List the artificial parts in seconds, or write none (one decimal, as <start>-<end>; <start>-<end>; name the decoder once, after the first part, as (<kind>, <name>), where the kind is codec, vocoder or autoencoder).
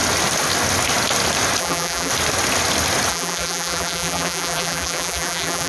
1.6-2.1 (vocoder, BigVGAN v2); 3.1-5.7